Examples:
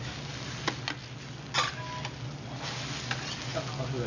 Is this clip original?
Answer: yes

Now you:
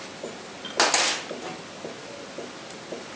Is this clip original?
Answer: yes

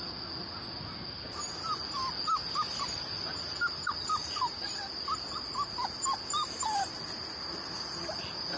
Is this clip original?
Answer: yes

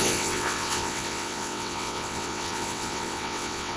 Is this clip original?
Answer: no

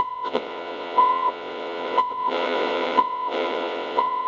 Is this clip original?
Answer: no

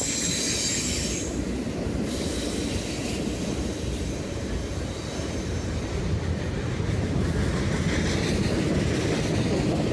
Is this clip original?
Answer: yes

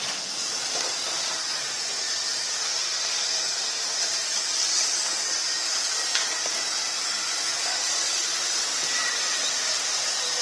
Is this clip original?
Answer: yes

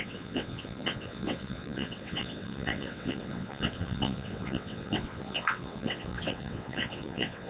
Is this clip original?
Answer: no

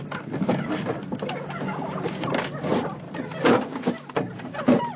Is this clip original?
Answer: yes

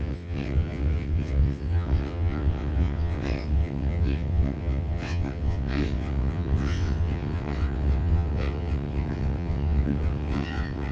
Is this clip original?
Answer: no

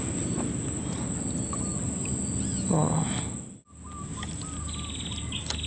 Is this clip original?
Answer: yes